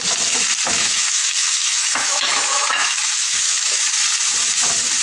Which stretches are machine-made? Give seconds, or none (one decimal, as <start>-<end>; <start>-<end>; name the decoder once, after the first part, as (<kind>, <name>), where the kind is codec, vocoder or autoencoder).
0.8-3.8 (autoencoder, DAC-VAE)